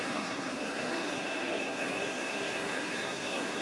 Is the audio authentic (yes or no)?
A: no